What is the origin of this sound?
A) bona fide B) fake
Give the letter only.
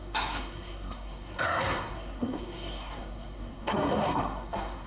B